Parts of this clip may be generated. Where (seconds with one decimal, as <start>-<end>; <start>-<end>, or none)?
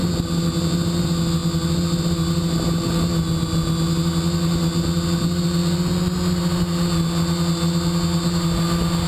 none